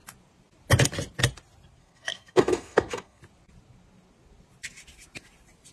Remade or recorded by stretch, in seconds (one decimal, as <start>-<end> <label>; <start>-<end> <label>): 0.0-1.8 recorded; 1.8-3.2 remade; 3.2-5.7 recorded